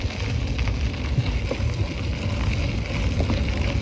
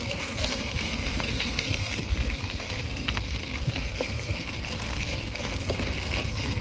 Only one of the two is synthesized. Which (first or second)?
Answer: second